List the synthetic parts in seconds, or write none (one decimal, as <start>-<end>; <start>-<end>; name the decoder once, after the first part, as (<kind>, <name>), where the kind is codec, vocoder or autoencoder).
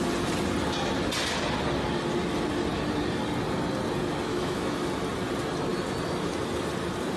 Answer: 4.3-4.9 (autoencoder, DAC-VAE)